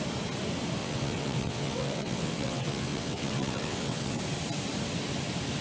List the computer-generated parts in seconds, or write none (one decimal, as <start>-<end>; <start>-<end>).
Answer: 0.8-4.2